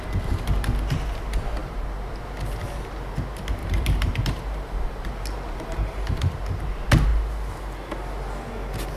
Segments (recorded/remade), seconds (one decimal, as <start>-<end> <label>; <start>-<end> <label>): 0.0-1.6 recorded; 1.6-2.1 remade; 2.1-3.6 recorded; 3.6-6.2 remade; 6.2-9.0 recorded